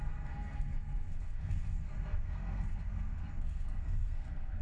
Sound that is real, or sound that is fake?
fake